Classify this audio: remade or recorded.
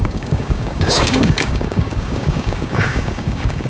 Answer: remade